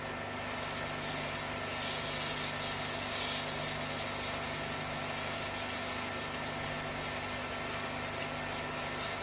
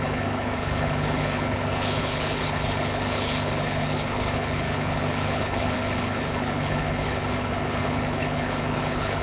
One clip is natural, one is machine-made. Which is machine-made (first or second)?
second